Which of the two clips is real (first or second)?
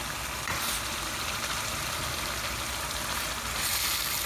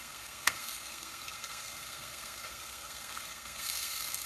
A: first